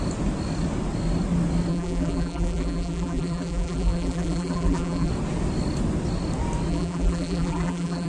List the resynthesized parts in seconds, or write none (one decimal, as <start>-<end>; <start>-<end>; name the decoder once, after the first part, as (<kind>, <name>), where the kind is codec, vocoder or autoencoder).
1.7-5.1 (vocoder, BigVGAN v2); 6.7-8.1